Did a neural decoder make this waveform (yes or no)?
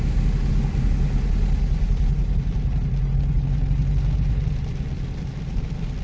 no